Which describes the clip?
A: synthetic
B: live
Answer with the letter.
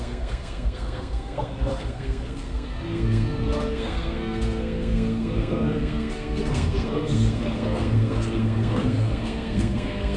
A